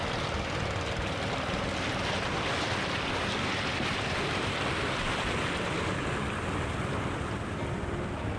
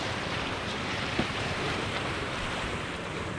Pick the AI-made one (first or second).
second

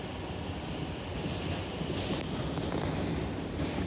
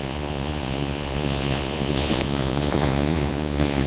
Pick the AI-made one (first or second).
second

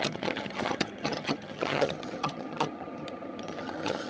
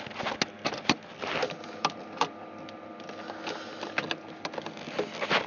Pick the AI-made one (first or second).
first